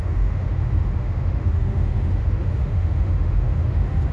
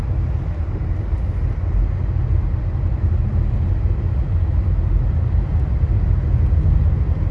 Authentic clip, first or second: second